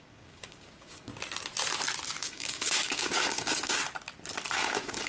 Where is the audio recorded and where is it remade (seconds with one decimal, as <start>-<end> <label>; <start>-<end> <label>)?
0.0-1.1 remade; 1.1-2.2 recorded; 2.2-3.8 remade; 3.8-4.5 recorded; 4.5-5.1 remade